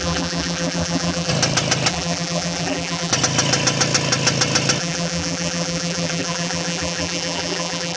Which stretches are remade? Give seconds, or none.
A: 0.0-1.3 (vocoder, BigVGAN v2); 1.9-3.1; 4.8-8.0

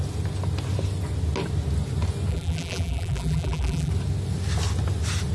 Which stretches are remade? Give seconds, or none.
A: 2.3-3.9 (vocoder, BigVGAN v2)

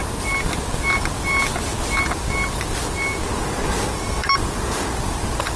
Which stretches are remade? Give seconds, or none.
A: 3.4-5.6 (vocoder, BigVGAN v2)

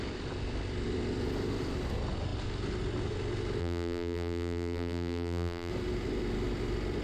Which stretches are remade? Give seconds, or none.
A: 3.6-5.7 (vocoder, BigVGAN v2)

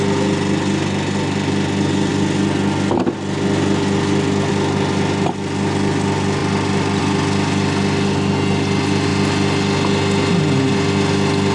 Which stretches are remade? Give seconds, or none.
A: none

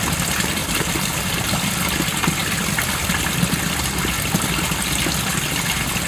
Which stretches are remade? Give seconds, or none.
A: 0.6-1.7 (vocoder, BigVGAN v2); 2.4-3.3